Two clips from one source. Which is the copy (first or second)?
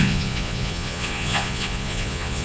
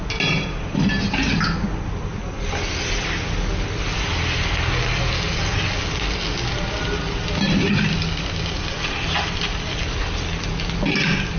first